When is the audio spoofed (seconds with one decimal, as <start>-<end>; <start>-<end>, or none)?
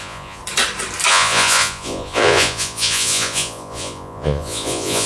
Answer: 0.0-0.4; 1.1-5.1